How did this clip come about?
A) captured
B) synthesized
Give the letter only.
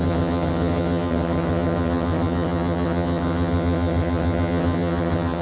B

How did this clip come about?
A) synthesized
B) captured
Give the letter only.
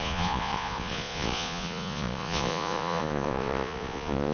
A